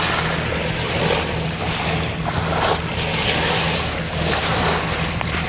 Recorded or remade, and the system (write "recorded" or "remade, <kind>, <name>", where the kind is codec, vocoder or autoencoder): recorded